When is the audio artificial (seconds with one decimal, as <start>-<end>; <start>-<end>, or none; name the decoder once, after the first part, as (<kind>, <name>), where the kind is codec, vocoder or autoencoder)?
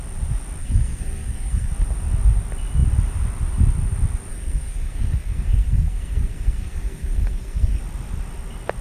0.6-1.7 (codec, SNAC); 4.3-7.8